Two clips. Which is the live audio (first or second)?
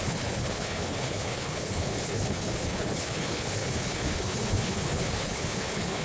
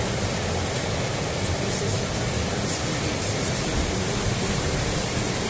second